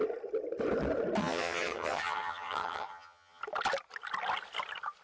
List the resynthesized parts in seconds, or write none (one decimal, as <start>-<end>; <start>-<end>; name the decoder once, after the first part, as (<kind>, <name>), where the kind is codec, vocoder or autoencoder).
1.2-3.4 (vocoder, HiFi-GAN)